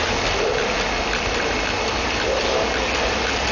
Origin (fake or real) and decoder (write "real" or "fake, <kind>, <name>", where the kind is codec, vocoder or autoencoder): real